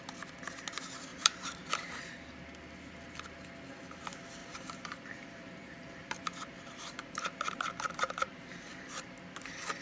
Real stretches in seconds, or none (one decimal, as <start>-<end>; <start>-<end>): 0.0-1.1; 2.0-4.4; 8.9-9.8